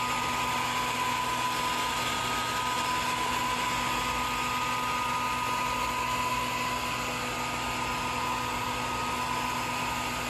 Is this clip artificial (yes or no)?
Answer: no